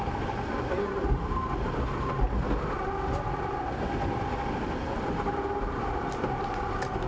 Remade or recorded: recorded